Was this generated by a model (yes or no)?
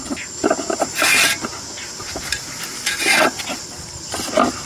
no